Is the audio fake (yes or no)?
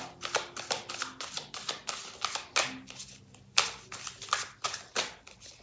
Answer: no